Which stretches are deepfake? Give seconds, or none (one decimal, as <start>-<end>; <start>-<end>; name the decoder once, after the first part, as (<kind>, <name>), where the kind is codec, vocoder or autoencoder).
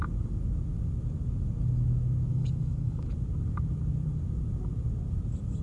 2.3-3.1 (codec, DAC)